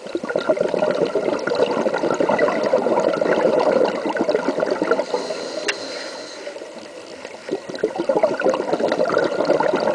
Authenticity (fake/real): real